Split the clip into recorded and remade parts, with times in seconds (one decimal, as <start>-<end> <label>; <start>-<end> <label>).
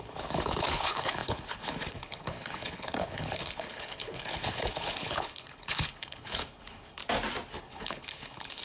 0.0-7.0 remade; 7.0-7.6 recorded; 7.6-8.6 remade